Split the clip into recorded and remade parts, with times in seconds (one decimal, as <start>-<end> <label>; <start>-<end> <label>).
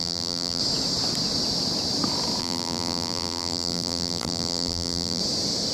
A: 0.0-0.6 remade; 0.6-2.4 recorded; 2.4-5.2 remade; 5.2-5.7 recorded